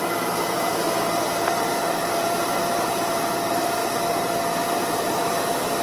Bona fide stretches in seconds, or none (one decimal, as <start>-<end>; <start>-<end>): 1.2-1.7; 3.8-4.9